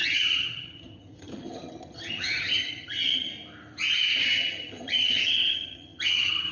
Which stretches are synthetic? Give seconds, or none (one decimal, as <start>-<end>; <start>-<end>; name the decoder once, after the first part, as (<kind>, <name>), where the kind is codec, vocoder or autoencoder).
0.0-3.3 (vocoder, HiFi-GAN); 4.2-6.5